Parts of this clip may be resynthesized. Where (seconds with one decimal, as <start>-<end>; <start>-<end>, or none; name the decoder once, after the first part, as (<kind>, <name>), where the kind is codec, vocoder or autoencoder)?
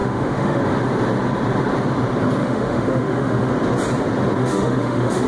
0.0-0.6 (autoencoder, DAC-VAE); 2.4-3.5; 4.4-5.3